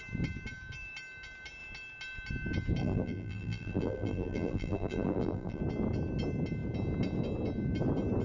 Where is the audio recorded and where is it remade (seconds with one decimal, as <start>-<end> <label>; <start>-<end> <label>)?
0.0-2.8 recorded; 2.8-5.6 remade; 5.6-8.2 recorded